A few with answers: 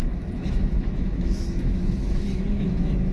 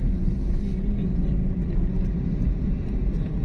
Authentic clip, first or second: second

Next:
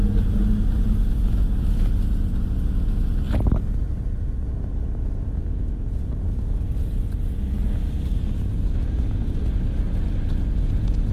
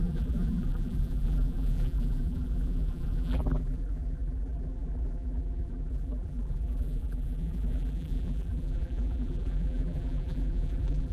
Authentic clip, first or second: first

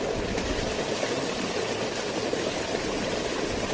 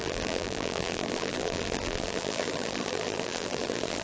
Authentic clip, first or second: first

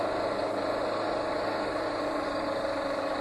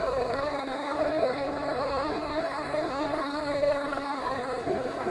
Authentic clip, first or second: first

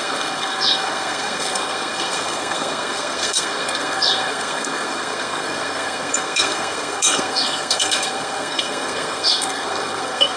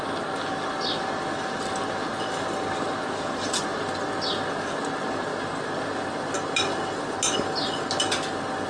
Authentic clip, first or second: second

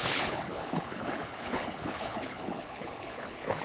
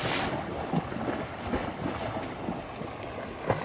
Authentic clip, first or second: second